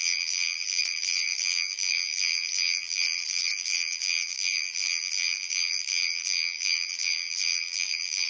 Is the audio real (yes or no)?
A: no